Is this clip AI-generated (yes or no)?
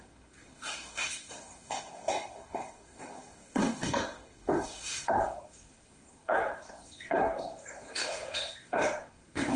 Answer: yes